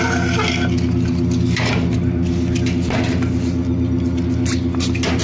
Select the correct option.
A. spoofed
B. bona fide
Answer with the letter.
B